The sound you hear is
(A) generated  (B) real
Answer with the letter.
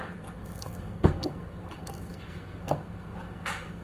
A